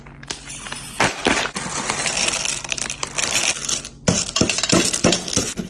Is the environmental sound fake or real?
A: real